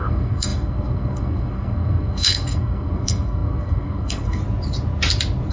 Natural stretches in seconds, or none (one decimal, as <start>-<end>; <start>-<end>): 4.4-5.5

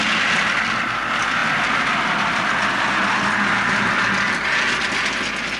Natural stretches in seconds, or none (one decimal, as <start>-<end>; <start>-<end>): 0.0-5.6

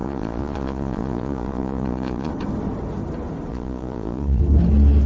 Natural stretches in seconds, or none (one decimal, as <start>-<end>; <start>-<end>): 2.3-3.5; 4.4-5.1

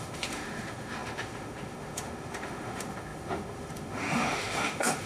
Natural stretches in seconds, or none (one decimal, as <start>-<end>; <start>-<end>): none

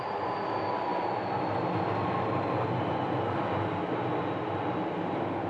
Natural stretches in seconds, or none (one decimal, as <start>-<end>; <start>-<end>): 0.0-5.5

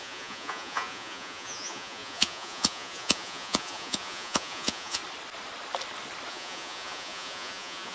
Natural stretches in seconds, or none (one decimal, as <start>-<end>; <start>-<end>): 5.0-6.3

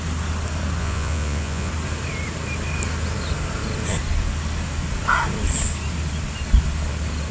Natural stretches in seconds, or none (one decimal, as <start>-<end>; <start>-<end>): 0.0-0.8; 1.7-7.3